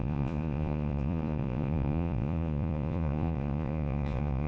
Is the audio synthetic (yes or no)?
yes